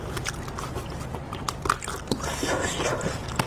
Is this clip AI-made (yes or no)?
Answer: no